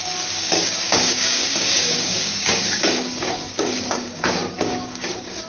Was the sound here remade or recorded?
remade